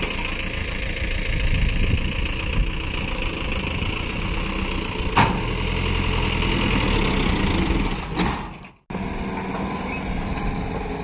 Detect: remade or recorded recorded